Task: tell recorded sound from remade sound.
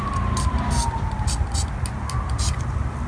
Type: recorded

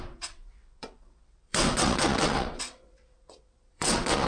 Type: remade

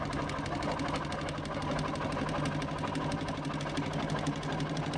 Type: recorded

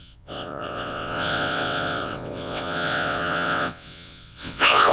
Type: remade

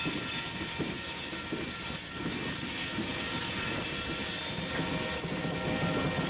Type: recorded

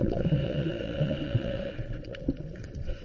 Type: remade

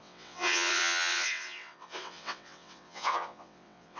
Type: remade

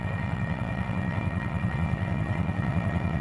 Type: remade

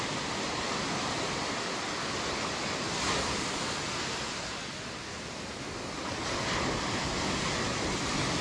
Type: recorded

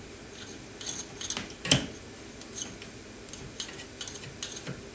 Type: recorded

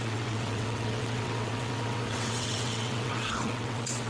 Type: remade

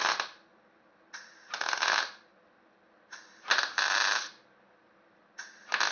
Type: recorded